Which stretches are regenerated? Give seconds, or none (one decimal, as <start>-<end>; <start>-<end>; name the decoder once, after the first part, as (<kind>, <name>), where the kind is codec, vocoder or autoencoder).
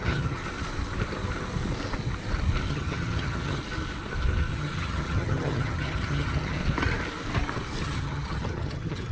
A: 0.0-0.4 (vocoder, HiFi-GAN); 2.7-3.6; 4.5-6.6; 7.8-9.1